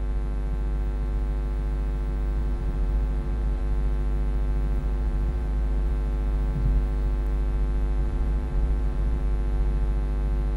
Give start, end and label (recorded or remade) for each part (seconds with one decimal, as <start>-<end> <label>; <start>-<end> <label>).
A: 0.0-2.4 recorded; 2.4-3.6 remade; 3.6-4.8 recorded; 4.8-5.9 remade; 5.9-8.0 recorded; 8.0-9.2 remade; 9.2-10.6 recorded